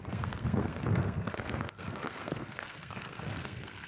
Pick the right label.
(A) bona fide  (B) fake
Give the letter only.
B